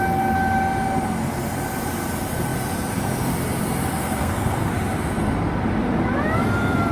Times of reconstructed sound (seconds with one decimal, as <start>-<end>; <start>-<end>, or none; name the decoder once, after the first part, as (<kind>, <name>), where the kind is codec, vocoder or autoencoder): 3.9-4.7 (codec, SNAC)